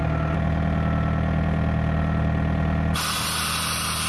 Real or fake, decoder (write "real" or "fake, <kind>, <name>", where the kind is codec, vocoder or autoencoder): real